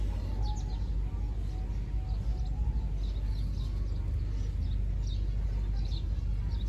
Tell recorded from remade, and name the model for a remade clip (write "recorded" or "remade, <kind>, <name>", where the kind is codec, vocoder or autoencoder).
recorded